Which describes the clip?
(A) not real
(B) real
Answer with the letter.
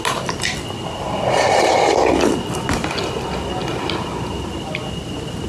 B